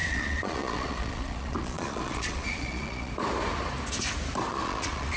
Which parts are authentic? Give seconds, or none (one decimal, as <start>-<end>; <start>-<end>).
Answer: 3.1-4.5